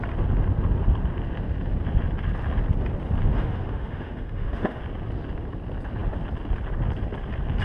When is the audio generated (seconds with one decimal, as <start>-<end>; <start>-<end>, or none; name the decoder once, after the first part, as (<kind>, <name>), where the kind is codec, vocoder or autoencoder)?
3.3-4.8 (autoencoder, DAC-VAE)